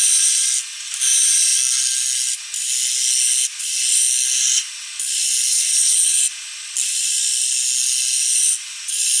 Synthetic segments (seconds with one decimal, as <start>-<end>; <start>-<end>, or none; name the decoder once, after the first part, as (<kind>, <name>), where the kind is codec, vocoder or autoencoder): 5.5-6.2 (codec, HILCodec)